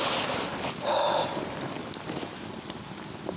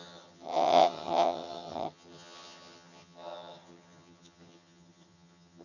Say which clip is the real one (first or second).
first